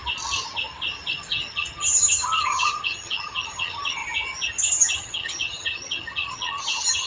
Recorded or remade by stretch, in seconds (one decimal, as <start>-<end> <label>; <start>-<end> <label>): 0.0-1.3 recorded; 1.3-4.0 remade; 4.0-4.6 recorded; 4.6-7.1 remade